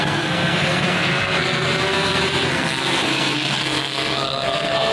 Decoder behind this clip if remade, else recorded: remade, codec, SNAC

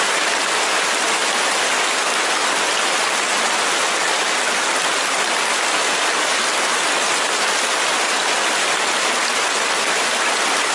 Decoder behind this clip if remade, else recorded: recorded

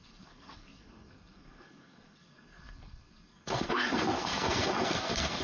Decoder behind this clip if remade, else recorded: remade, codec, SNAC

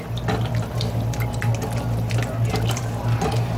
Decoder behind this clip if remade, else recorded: recorded